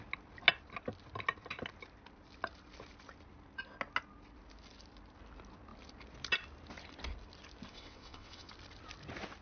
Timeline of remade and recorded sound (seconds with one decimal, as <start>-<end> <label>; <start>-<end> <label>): 0.0-7.7 recorded; 7.7-8.5 remade; 8.5-9.4 recorded